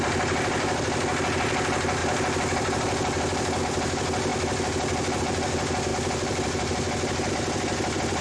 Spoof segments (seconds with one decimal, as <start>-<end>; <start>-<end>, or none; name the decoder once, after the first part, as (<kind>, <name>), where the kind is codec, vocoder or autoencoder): none